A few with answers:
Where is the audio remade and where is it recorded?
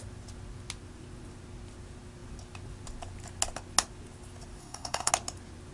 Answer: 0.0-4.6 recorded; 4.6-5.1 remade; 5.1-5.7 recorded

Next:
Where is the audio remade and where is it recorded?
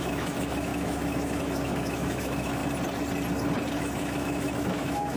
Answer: 0.0-2.6 remade; 2.6-3.8 recorded; 3.8-5.2 remade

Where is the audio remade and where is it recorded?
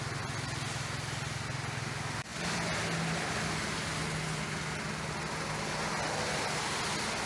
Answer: 0.0-7.3 recorded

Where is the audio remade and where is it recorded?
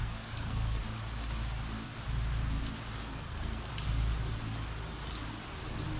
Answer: 0.0-0.8 remade; 0.8-3.0 recorded; 3.0-3.7 remade; 3.7-6.0 recorded